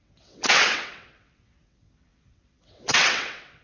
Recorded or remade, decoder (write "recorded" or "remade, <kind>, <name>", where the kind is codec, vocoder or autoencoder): remade, vocoder, WaveNeXt